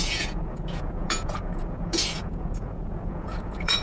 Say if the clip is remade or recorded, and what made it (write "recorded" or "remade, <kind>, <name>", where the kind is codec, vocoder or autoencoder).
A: remade, vocoder, Vocos